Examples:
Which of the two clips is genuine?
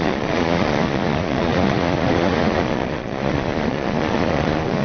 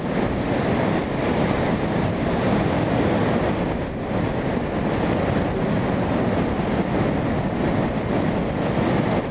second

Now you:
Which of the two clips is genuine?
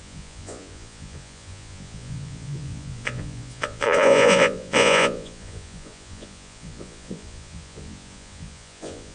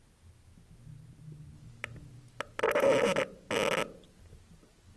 second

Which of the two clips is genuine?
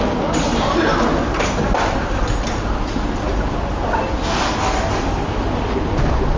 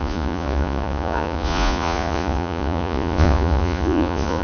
first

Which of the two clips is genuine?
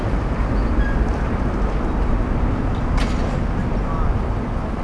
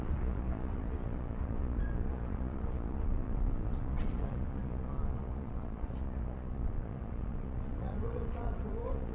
first